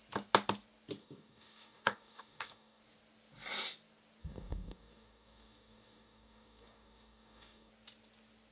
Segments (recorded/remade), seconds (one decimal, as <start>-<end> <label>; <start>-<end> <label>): 0.0-1.0 recorded; 1.0-2.8 remade; 2.8-4.2 recorded; 4.2-7.7 remade; 7.7-8.5 recorded